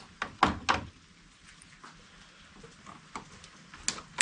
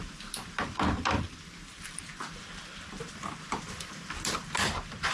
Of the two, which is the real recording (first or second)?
first